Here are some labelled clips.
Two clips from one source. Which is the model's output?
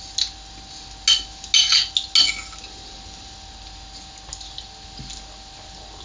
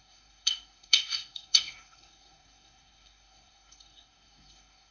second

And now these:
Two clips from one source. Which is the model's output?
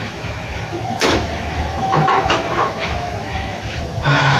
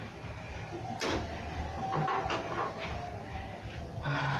first